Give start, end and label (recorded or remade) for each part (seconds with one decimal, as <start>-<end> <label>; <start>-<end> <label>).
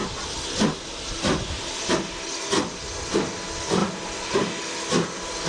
0.0-5.5 recorded